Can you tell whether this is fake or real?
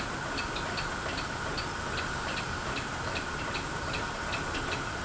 real